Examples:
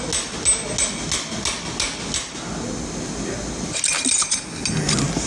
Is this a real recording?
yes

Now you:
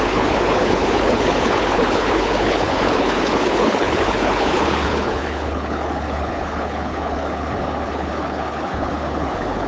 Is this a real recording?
no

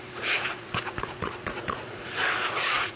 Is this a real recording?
no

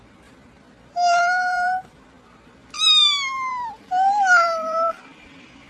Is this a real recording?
no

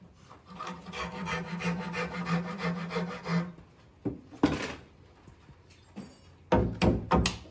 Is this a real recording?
yes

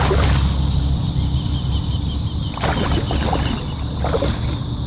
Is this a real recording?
yes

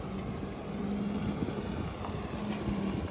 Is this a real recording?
yes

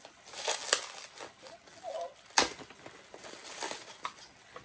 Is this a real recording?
yes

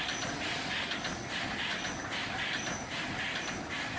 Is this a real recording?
yes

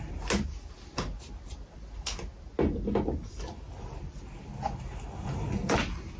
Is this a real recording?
yes